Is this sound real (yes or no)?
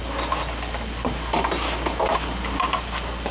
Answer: yes